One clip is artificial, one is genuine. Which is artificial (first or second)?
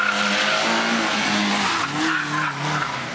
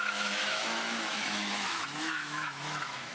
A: second